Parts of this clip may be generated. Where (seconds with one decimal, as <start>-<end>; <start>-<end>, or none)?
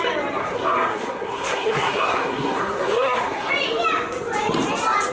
0.4-3.5